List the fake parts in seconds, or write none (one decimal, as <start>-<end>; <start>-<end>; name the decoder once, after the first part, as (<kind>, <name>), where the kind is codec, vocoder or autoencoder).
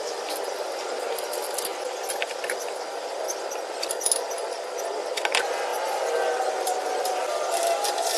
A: none